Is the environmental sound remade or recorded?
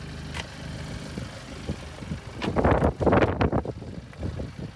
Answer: recorded